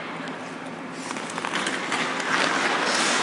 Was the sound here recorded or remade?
recorded